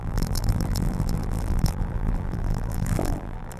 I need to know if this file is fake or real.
fake